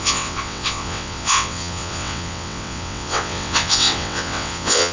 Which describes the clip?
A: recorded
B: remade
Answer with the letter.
B